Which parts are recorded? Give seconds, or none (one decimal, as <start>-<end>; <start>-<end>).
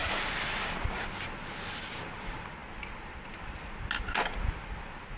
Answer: 0.0-5.2